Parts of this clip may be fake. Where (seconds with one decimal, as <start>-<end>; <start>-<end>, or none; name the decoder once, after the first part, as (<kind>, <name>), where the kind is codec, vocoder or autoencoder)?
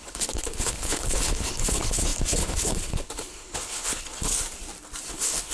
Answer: 0.0-4.3 (codec, HILCodec); 5.1-5.5